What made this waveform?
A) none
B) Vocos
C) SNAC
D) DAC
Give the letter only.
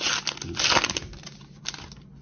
A